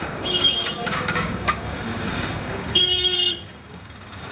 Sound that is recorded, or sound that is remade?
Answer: remade